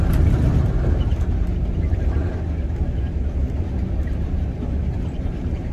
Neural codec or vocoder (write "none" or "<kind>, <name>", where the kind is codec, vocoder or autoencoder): none